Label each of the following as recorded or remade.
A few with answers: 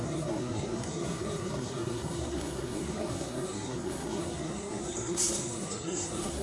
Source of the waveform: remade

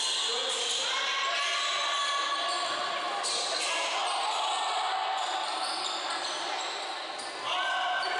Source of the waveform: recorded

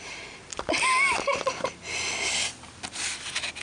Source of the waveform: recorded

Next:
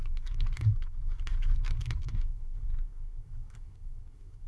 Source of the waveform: remade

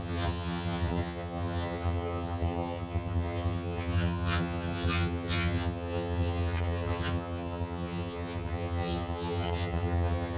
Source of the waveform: remade